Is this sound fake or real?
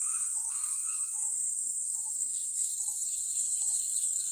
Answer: fake